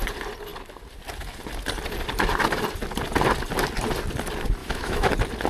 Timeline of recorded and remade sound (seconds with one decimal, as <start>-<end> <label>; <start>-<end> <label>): 0.0-4.6 recorded; 4.6-5.1 remade; 5.1-5.5 recorded